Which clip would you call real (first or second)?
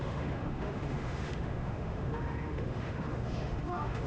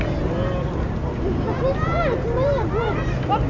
second